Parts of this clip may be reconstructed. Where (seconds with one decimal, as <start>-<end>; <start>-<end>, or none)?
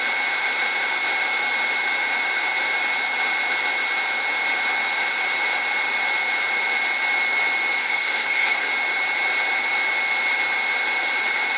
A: 7.8-8.7